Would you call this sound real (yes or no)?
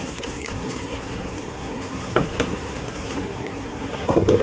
no